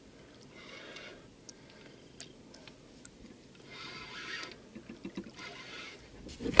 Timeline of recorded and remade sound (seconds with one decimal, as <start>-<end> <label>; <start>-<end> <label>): 0.0-6.6 recorded